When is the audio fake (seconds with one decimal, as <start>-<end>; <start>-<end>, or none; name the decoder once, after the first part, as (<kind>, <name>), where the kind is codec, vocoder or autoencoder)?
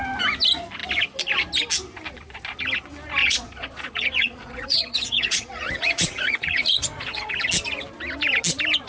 3.2-7.3 (vocoder, Vocos)